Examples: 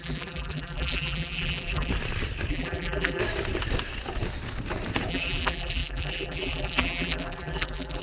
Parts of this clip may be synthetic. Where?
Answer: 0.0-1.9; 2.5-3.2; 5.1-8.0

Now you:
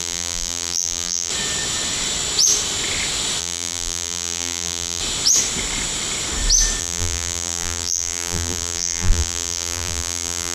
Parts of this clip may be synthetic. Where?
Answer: 0.0-1.3; 3.4-5.0; 6.8-10.5

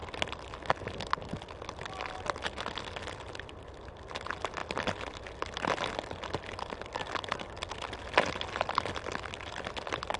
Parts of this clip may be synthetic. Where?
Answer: none

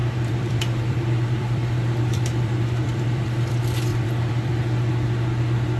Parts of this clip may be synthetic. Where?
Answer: 0.0-3.5; 3.9-4.5

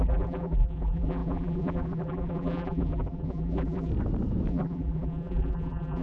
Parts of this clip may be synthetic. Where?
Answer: 0.0-3.9; 4.5-6.0